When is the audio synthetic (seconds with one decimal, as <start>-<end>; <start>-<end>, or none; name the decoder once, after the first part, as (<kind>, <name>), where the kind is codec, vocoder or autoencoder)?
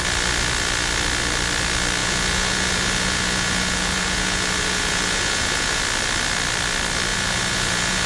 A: 2.0-5.8 (vocoder, Vocos); 7.1-8.1